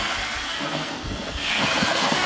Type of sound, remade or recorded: remade